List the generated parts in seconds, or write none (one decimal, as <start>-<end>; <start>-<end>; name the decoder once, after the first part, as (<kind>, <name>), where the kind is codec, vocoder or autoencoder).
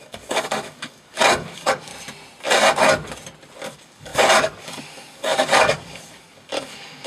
0.0-1.9 (codec, DAC); 3.6-7.1